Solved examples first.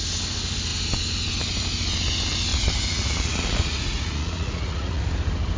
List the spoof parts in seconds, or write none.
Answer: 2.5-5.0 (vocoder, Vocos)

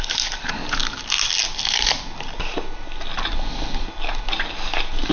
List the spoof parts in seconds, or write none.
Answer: none

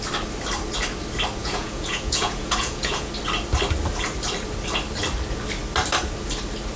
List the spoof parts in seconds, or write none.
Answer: 1.4-3.1 (vocoder, Vocos)

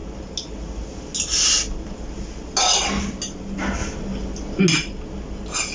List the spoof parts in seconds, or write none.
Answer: none

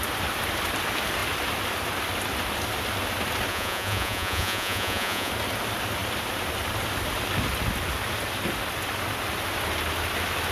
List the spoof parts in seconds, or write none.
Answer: 3.5-5.3 (vocoder, Vocos)

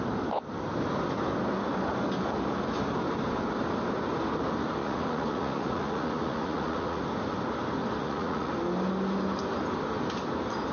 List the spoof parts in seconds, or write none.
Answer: 4.8-7.0 (vocoder, Vocos); 8.0-8.5

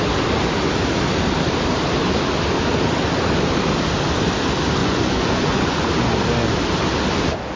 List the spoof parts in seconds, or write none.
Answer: 4.8-5.9 (vocoder, Vocos)

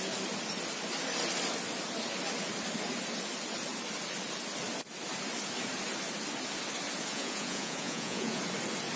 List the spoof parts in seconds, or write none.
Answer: 7.1-8.4 (vocoder, Vocos)